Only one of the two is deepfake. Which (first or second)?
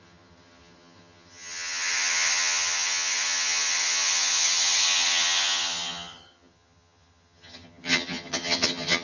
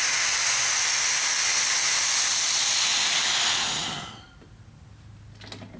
first